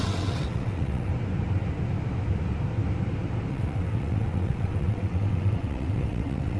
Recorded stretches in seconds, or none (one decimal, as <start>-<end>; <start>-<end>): 1.1-3.5